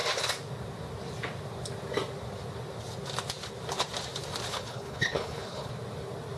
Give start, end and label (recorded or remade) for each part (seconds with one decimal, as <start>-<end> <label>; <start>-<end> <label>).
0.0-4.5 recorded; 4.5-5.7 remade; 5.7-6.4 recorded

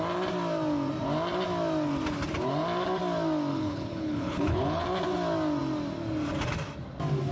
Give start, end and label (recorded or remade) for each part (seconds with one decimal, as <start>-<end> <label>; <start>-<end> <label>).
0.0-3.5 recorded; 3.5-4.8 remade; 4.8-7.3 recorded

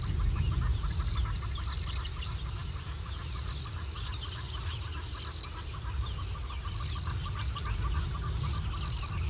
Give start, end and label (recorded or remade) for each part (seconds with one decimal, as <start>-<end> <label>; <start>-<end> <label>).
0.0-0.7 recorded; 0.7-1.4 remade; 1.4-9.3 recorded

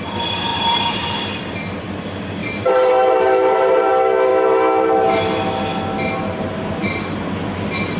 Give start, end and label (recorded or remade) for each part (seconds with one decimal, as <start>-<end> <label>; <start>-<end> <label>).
0.0-0.5 recorded; 0.5-1.6 remade; 1.6-2.4 recorded; 2.4-3.9 remade; 3.9-8.0 recorded

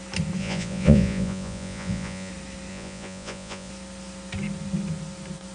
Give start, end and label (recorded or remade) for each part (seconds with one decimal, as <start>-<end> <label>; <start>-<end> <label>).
0.0-0.4 recorded; 0.4-2.3 remade; 2.3-2.7 recorded; 2.7-3.7 remade; 3.7-5.5 recorded

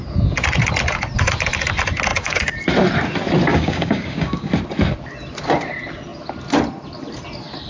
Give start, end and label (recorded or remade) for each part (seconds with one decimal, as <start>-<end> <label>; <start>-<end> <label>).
0.0-2.1 recorded; 2.1-2.6 remade; 2.6-3.5 recorded; 3.5-4.5 remade; 4.5-7.7 recorded